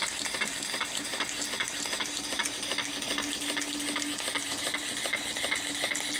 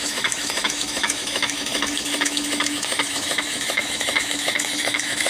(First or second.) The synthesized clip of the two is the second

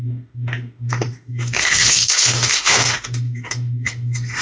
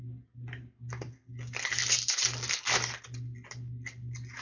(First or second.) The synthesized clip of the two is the first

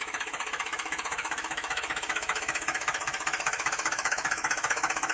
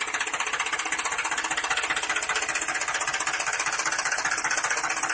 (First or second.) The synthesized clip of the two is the first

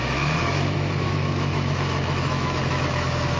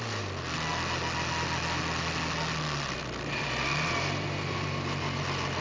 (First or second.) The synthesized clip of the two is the first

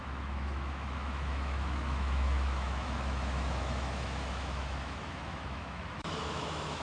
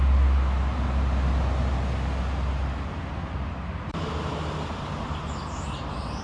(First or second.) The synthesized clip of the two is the first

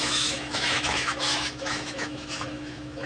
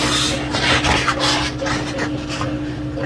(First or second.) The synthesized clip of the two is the first